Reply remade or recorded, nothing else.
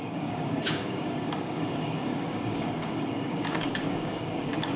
remade